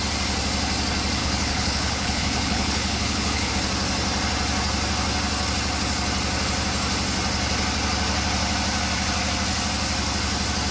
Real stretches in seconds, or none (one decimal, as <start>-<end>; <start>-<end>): 0.0-1.2; 3.5-10.7